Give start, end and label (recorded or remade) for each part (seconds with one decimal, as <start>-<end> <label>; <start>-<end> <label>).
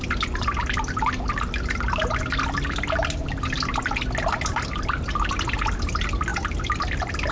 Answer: 0.0-7.3 recorded